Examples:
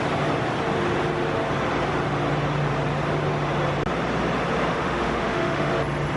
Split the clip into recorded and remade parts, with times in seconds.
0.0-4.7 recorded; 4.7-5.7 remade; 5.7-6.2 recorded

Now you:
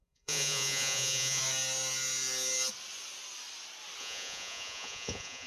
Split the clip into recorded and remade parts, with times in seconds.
0.0-1.4 remade; 1.4-4.0 recorded; 4.0-5.5 remade